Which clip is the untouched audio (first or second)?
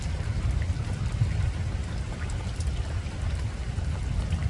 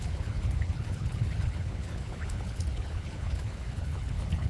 first